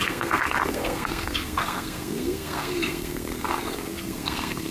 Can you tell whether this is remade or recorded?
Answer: remade